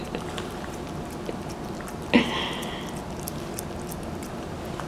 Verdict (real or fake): real